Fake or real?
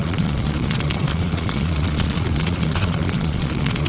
fake